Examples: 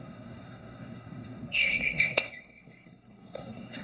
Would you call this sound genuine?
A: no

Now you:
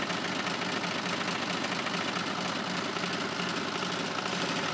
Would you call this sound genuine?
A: yes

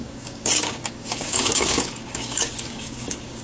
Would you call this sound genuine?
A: no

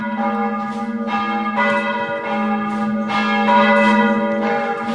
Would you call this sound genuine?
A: yes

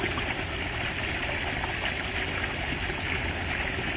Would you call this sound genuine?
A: yes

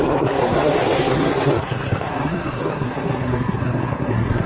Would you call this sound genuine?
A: no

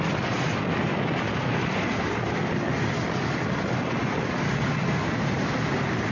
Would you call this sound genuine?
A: yes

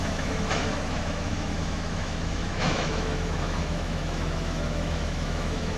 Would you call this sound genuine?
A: no